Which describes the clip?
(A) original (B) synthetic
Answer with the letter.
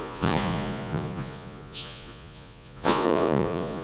B